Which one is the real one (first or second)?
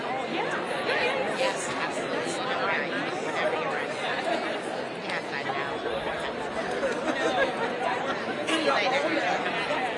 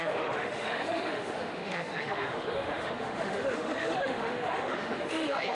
first